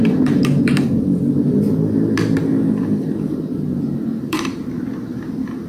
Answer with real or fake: fake